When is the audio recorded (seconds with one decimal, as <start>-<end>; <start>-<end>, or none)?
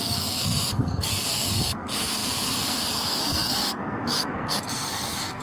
none